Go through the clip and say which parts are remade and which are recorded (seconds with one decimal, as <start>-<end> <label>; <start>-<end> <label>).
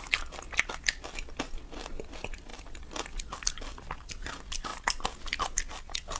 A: 0.0-2.5 recorded; 2.5-3.6 remade; 3.6-6.2 recorded